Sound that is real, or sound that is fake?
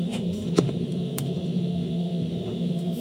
fake